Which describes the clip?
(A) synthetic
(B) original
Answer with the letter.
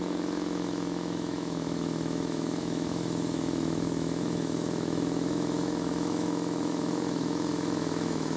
A